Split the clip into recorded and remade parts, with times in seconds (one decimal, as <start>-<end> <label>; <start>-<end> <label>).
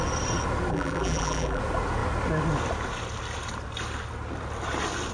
0.0-0.7 recorded; 0.7-1.6 remade; 1.6-5.1 recorded